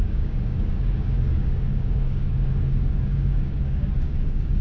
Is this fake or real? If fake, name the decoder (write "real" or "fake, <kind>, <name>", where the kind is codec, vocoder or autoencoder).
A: fake, codec, DAC